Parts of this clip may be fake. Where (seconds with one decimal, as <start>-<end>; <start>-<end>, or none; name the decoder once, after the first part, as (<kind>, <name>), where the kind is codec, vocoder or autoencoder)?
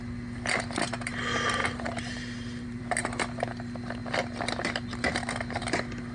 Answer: 1.6-2.8 (vocoder, BigVGAN v2)